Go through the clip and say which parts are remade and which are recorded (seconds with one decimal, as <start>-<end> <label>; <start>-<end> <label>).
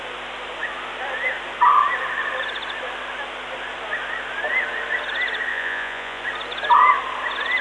0.0-5.5 recorded; 5.5-6.2 remade; 6.2-7.6 recorded